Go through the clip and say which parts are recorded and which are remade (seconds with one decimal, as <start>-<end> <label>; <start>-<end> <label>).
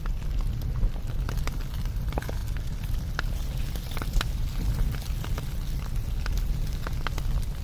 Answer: 0.0-7.6 recorded